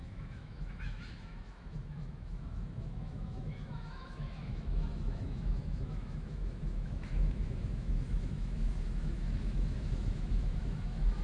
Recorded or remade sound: remade